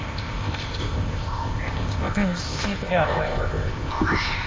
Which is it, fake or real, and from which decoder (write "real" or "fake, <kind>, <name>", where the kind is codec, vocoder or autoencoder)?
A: fake, codec, ZipCodec